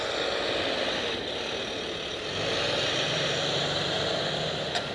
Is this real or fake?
real